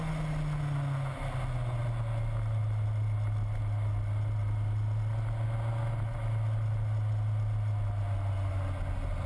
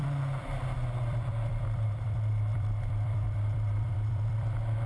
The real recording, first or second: first